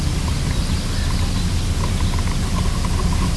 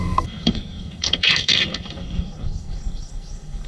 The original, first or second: first